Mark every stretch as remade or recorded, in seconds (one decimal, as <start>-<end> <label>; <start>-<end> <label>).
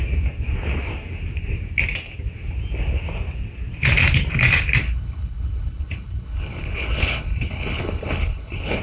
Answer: 0.0-4.8 recorded; 4.8-8.8 remade